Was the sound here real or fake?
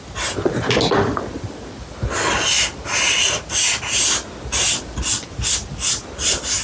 real